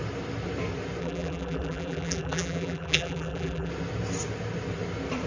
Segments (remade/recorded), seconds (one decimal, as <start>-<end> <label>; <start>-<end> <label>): 0.0-1.0 recorded; 1.0-3.7 remade; 3.7-5.3 recorded